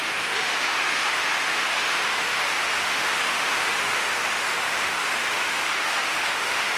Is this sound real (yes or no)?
no